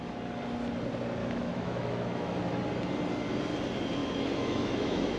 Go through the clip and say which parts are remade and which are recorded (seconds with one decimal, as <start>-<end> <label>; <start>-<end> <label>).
0.0-1.2 recorded; 1.2-2.6 remade; 2.6-4.0 recorded; 4.0-5.2 remade